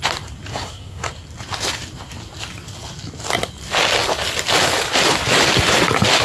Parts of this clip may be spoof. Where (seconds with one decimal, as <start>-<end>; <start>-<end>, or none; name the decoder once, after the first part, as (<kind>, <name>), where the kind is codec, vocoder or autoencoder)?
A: 0.5-1.1 (codec, SNAC)